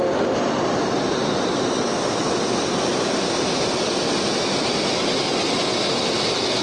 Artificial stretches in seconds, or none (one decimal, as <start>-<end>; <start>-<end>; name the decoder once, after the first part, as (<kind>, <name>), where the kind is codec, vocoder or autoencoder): none